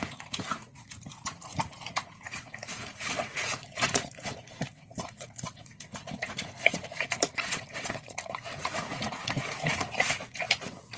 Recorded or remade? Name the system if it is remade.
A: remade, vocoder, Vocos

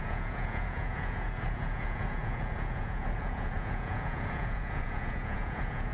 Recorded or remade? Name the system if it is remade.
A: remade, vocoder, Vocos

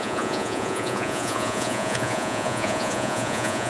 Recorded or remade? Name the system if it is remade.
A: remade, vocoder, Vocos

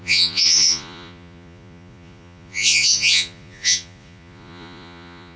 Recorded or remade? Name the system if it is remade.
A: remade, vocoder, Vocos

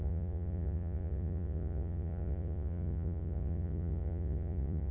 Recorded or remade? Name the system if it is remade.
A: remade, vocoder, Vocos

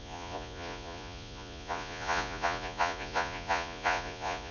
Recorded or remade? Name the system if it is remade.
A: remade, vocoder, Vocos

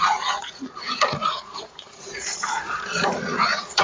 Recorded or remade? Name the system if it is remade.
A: remade, vocoder, Vocos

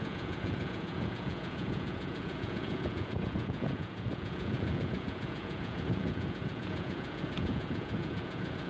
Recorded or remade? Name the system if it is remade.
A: remade, vocoder, Vocos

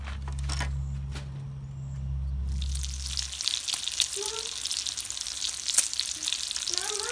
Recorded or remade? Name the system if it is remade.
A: recorded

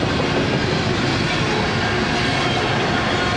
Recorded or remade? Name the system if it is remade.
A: recorded